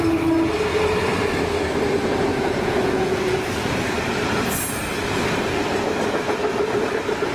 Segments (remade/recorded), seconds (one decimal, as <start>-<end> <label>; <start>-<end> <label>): 0.0-2.3 recorded; 2.3-3.2 remade; 3.2-7.3 recorded